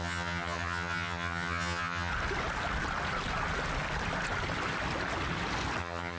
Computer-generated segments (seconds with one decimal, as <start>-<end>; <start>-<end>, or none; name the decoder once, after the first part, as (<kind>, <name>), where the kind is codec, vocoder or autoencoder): 0.0-2.1 (vocoder, HiFi-GAN); 5.8-6.2